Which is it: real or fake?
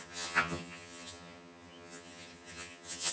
fake